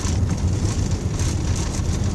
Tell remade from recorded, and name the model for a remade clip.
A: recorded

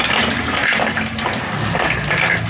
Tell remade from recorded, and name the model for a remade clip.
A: recorded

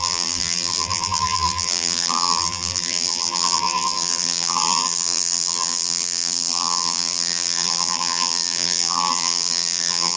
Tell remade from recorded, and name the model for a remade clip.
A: remade, vocoder, BigVGAN v2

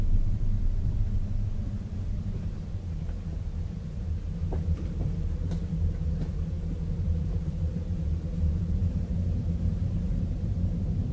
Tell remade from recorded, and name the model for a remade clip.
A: remade, vocoder, BigVGAN v2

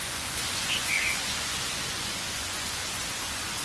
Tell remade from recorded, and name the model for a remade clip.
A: remade, vocoder, Vocos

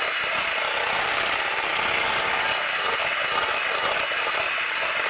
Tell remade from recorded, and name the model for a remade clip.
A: recorded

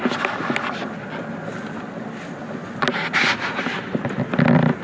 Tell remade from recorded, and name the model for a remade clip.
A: recorded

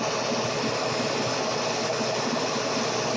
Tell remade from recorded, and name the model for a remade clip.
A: recorded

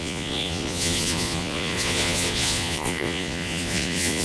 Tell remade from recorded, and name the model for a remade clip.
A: remade, vocoder, Vocos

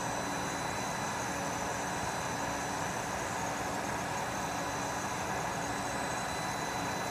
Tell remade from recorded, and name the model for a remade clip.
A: recorded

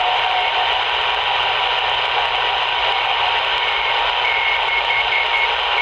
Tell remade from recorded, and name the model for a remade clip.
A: remade, vocoder, BigVGAN v2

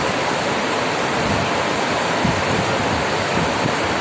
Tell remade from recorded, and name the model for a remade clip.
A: remade, vocoder, BigVGAN v2